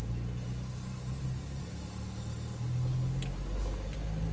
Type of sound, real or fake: real